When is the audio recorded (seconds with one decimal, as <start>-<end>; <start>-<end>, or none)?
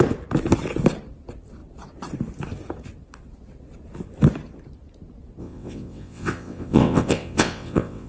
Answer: 0.0-5.4